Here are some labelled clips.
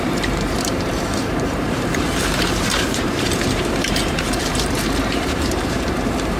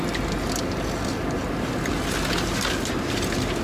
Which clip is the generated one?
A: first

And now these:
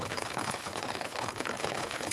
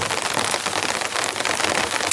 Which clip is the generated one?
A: first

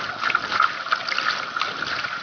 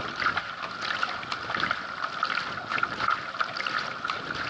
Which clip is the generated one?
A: second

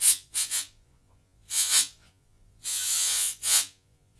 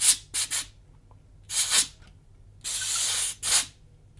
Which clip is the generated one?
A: first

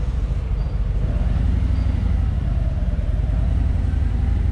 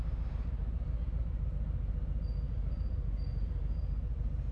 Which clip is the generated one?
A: first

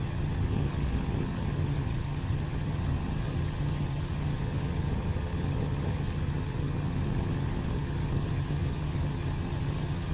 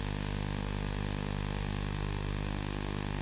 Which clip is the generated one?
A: first